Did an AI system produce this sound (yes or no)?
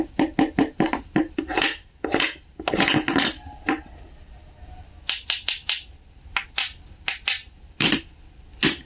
no